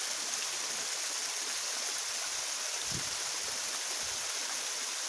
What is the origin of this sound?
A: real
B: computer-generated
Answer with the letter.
A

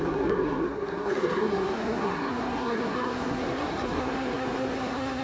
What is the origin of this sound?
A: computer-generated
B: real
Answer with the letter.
A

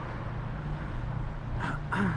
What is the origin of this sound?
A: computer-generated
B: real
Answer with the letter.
B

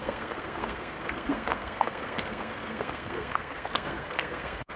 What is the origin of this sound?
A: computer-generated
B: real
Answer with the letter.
A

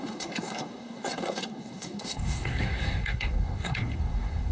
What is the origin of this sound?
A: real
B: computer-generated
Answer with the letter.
B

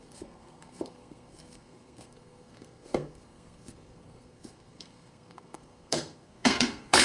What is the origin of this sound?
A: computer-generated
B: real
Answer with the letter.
A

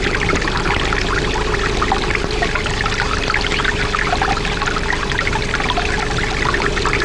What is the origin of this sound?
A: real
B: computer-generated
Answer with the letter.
A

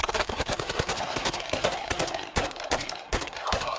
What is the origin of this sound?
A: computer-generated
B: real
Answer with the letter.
A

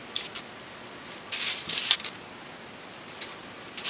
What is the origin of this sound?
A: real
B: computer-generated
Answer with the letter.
A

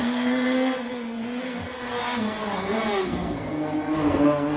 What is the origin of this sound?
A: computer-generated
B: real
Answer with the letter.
A